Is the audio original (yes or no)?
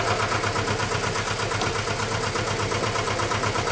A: yes